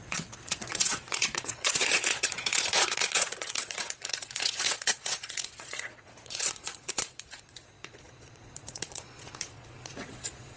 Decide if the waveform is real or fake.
fake